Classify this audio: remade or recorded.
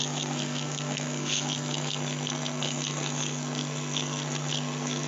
remade